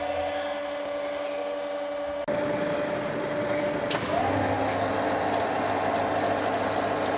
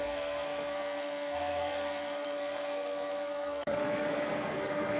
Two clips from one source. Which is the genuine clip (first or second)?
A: first